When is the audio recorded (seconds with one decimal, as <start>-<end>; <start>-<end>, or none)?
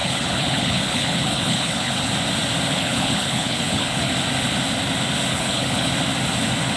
2.1-2.7; 4.1-5.3; 5.9-6.8